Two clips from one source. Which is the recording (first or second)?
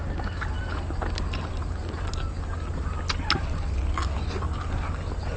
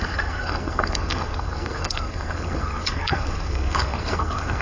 first